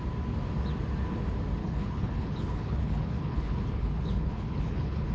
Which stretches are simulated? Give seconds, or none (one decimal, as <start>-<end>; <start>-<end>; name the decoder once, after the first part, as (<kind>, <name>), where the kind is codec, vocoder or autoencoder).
1.6-5.1 (codec, HILCodec)